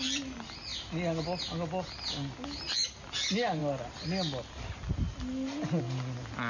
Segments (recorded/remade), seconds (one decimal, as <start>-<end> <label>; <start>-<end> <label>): 0.0-6.5 recorded

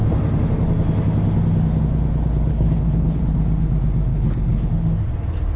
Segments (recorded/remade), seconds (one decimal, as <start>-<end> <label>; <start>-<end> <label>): 0.0-2.5 recorded; 2.5-3.2 remade; 3.2-4.1 recorded; 4.1-4.7 remade; 4.7-5.6 recorded

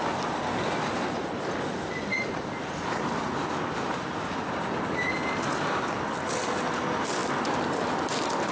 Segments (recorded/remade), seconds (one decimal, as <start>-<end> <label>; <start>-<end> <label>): 0.0-8.5 recorded

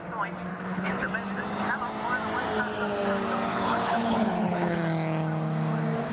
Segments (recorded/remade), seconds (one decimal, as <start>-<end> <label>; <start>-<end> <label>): 0.0-0.5 recorded; 0.5-1.1 remade; 1.1-3.5 recorded; 3.5-4.8 remade; 4.8-6.1 recorded

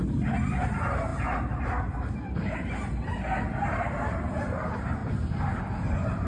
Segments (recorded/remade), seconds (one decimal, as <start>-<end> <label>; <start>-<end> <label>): 0.0-6.3 recorded

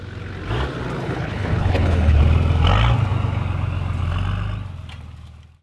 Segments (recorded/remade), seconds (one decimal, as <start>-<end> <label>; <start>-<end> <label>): 0.0-1.0 recorded; 1.0-2.2 remade; 2.2-5.6 recorded